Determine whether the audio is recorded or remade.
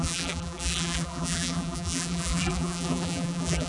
remade